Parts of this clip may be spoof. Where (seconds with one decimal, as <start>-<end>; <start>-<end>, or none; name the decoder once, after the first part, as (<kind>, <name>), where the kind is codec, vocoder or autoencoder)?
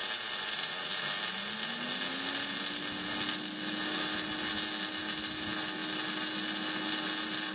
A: none